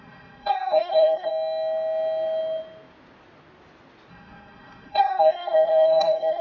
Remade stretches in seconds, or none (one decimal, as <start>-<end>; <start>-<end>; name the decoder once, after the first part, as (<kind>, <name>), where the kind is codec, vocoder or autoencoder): 0.0-1.3 (codec, SNAC); 4.1-6.4